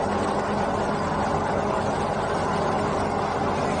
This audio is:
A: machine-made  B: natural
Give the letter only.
B